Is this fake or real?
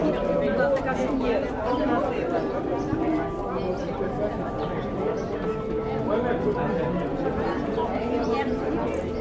real